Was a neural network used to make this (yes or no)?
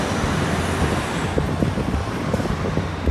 no